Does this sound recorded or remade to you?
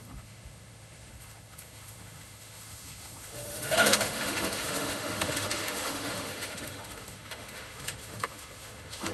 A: remade